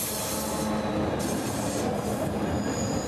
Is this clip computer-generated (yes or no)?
no